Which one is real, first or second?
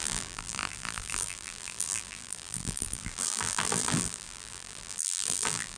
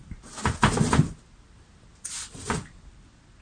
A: second